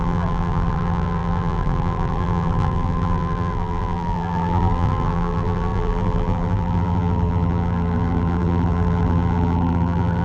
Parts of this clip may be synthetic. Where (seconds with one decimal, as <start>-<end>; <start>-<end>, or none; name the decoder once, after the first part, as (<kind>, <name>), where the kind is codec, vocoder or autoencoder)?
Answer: 0.0-10.2 (vocoder, BigVGAN v2)